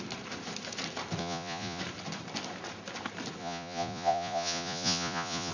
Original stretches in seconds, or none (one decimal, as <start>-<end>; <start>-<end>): 0.0-1.2; 1.8-3.4